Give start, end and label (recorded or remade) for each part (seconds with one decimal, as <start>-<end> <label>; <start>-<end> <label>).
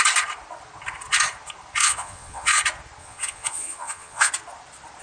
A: 0.0-1.8 recorded; 1.8-2.6 remade; 2.6-3.0 recorded; 3.0-4.3 remade; 4.3-5.0 recorded